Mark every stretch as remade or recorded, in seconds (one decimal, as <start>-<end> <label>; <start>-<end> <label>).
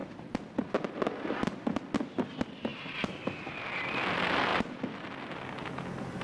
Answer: 0.0-0.9 remade; 0.9-4.5 recorded; 4.5-5.8 remade; 5.8-6.2 recorded